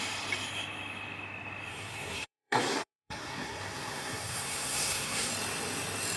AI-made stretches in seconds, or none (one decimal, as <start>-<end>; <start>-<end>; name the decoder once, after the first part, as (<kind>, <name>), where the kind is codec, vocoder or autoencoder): 1.7-5.3 (codec, SNAC)